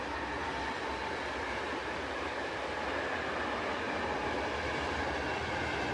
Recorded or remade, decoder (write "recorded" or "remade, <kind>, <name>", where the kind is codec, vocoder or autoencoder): recorded